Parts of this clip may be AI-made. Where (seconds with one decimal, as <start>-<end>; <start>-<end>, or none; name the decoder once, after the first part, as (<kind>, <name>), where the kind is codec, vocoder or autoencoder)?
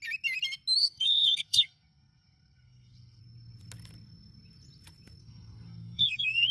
0.8-3.2 (codec, SNAC); 5.2-6.5